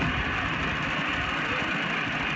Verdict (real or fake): real